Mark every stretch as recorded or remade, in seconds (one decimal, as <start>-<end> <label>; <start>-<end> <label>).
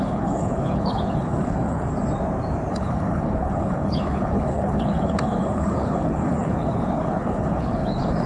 0.0-1.9 remade; 1.9-2.7 recorded; 2.7-8.3 remade